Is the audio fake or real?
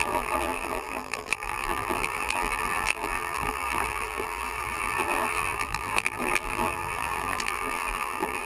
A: fake